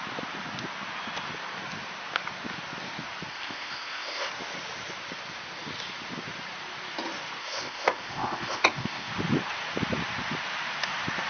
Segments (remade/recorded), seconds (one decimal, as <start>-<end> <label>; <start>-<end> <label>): 0.0-3.3 recorded; 3.3-4.3 remade; 4.3-7.4 recorded; 7.4-9.1 remade; 9.1-11.3 recorded